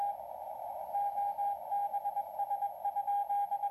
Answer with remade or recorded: recorded